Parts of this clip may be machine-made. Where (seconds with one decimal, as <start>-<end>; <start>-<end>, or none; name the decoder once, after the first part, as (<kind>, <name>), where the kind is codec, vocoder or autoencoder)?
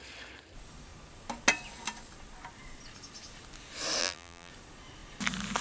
4.0-4.5 (vocoder, BigVGAN v2)